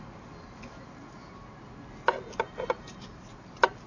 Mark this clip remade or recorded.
recorded